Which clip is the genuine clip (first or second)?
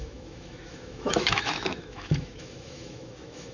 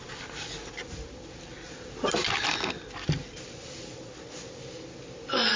second